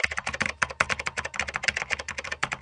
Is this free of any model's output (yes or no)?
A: no